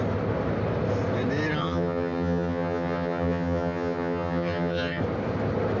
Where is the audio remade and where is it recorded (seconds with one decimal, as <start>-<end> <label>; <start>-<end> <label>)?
0.0-1.6 recorded; 1.6-5.0 remade; 5.0-5.8 recorded